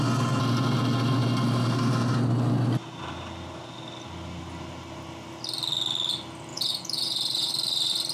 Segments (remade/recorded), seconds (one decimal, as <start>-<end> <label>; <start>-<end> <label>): 0.0-6.5 recorded; 6.5-7.5 remade; 7.5-8.1 recorded